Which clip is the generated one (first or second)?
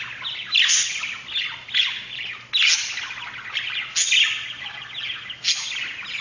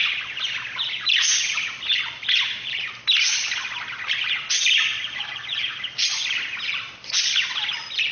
second